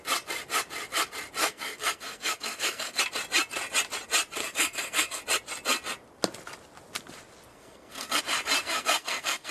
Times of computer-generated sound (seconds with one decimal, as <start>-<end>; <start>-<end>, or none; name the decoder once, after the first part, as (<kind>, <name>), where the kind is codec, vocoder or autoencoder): 1.4-3.0 (codec, SNAC); 4.4-5.2; 7.5-8.2; 8.6-9.5